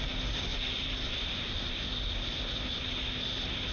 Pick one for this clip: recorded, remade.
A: recorded